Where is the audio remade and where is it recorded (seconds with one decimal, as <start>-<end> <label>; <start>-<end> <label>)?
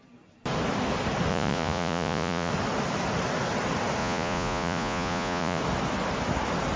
0.0-1.3 recorded; 1.3-2.5 remade; 2.5-4.0 recorded; 4.0-5.6 remade; 5.6-6.8 recorded